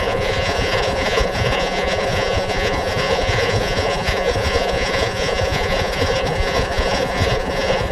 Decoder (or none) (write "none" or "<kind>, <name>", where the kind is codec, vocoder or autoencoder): vocoder, Vocos